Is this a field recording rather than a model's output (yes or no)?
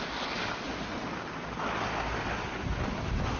yes